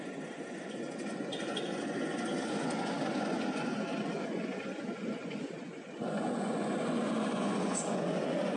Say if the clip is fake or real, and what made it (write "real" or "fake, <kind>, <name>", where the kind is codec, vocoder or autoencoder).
fake, vocoder, Vocos